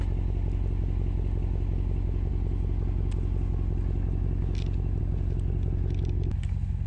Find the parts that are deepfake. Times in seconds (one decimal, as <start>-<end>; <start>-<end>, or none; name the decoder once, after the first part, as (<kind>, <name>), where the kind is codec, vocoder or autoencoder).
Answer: none